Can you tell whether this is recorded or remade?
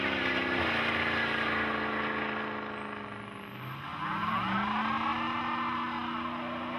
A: recorded